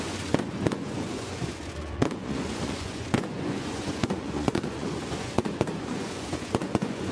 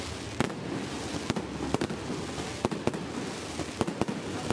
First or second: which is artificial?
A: first